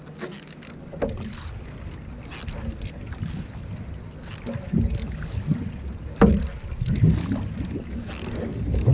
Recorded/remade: recorded